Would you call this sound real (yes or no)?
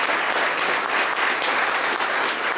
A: yes